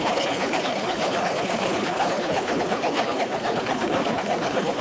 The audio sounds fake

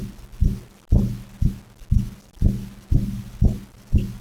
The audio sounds real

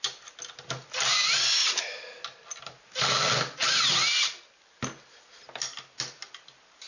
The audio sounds real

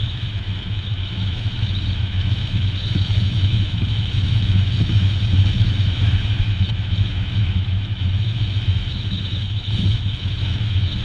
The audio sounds fake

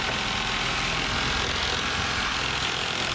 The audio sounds real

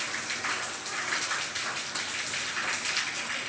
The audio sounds real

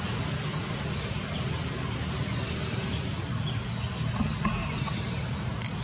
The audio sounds real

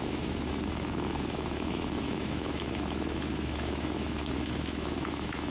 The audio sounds fake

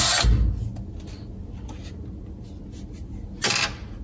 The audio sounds real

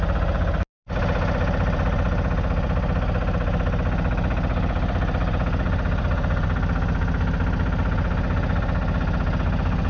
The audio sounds real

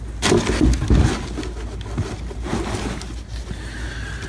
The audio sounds real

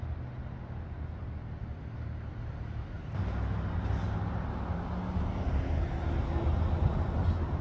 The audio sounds real